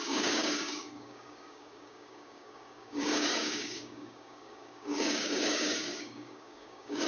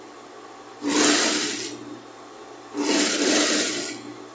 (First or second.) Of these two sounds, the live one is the second